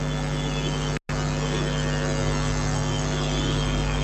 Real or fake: real